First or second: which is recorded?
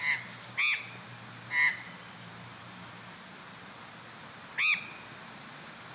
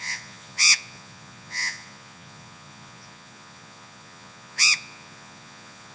first